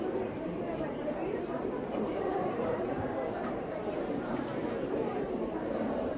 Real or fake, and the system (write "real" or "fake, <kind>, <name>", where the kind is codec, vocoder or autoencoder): fake, vocoder, BigVGAN v2